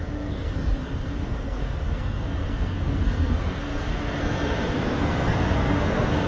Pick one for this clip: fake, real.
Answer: fake